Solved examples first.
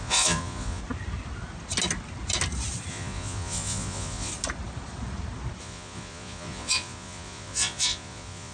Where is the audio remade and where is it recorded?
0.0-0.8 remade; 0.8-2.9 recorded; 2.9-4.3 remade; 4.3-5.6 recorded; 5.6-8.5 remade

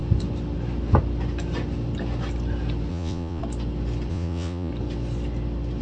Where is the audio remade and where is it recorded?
0.0-2.9 recorded; 2.9-3.4 remade; 3.4-4.1 recorded; 4.1-4.7 remade; 4.7-5.8 recorded

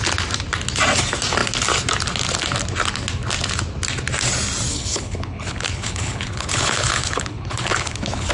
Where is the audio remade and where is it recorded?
0.0-4.7 recorded; 4.7-8.3 remade

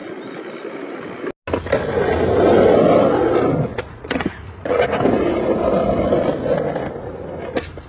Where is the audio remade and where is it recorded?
0.0-3.7 recorded; 3.7-4.8 remade; 4.8-7.9 recorded

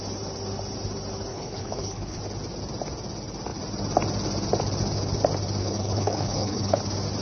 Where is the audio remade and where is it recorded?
0.0-1.3 recorded; 1.3-2.2 remade; 2.2-5.6 recorded; 5.6-6.8 remade; 6.8-7.2 recorded

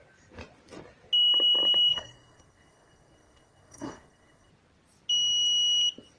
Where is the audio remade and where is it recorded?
0.0-1.9 recorded; 1.9-4.5 remade; 4.5-6.2 recorded

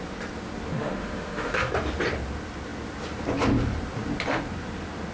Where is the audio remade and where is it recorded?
0.0-0.7 recorded; 0.7-1.7 remade; 1.7-5.1 recorded